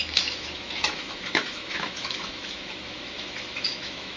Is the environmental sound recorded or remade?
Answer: remade